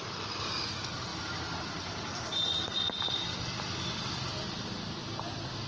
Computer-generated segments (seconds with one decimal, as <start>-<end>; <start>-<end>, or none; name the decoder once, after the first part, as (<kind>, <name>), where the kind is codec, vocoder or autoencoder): 1.1-4.1 (vocoder, BigVGAN v2)